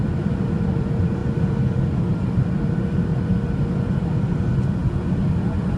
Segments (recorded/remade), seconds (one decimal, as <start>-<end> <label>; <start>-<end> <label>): 0.0-3.1 remade; 3.1-4.2 recorded; 4.2-4.8 remade; 4.8-5.8 recorded